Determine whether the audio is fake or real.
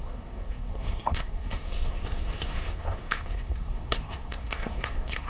fake